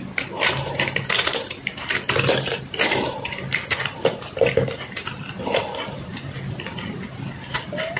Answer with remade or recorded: recorded